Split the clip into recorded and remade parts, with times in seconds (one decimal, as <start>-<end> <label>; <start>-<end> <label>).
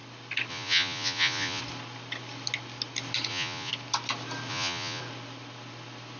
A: 0.0-0.5 recorded; 0.5-1.6 remade; 1.6-3.3 recorded; 3.3-3.7 remade; 3.7-4.5 recorded; 4.5-5.0 remade; 5.0-6.2 recorded